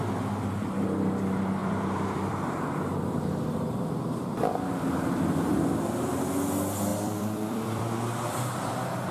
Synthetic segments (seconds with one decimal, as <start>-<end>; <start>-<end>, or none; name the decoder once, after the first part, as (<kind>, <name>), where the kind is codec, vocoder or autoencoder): 1.6-2.8 (vocoder, BigVGAN v2); 6.9-8.0

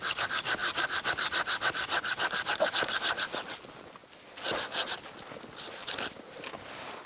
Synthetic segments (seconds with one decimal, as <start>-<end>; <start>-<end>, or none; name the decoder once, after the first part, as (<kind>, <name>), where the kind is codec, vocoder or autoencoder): 0.6-2.5 (vocoder, BigVGAN v2); 5.8-6.5

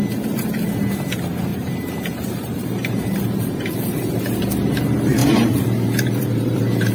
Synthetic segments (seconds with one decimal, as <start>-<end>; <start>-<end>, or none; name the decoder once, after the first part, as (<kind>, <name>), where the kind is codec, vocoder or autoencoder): 1.5-4.2 (vocoder, BigVGAN v2); 5.2-6.9

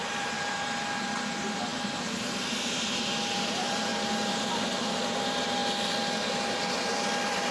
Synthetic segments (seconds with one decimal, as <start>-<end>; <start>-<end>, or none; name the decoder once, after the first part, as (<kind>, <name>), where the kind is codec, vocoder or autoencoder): 0.0-3.9 (vocoder, BigVGAN v2); 4.8-5.6; 6.9-7.5

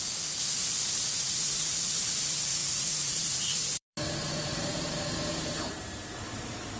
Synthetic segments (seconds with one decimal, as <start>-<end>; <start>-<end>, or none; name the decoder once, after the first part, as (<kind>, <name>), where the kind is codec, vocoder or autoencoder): 2.6-6.8 (vocoder, BigVGAN v2)